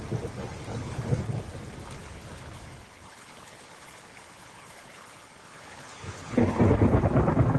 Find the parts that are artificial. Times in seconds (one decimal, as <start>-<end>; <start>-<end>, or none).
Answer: 0.7-1.2; 2.0-6.6